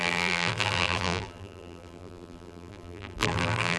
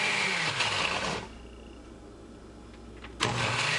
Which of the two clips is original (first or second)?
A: second